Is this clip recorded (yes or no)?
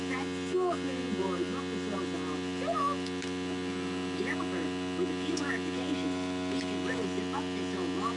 yes